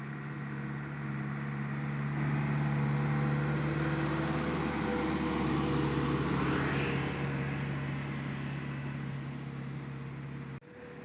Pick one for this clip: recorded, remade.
recorded